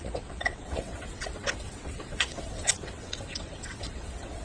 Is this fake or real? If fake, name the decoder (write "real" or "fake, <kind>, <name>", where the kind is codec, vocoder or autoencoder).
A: fake, vocoder, WaveNeXt